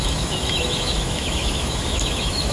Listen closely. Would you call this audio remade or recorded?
remade